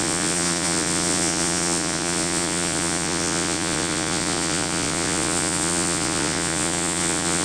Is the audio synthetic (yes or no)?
yes